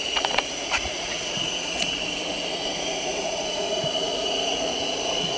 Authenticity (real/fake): fake